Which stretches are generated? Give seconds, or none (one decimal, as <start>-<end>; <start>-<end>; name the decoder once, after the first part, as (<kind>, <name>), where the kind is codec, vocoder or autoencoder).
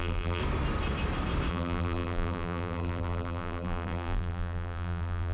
0.0-0.4 (vocoder, BigVGAN v2); 1.5-5.3